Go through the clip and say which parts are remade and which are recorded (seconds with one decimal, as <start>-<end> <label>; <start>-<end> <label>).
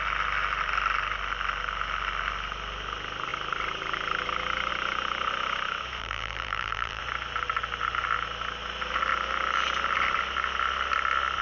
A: 0.0-6.0 recorded; 6.0-7.0 remade; 7.0-11.4 recorded